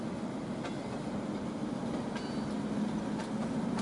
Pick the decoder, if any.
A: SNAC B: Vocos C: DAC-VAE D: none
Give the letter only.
D